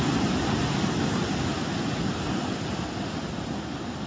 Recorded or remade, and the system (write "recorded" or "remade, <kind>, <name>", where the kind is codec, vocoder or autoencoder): recorded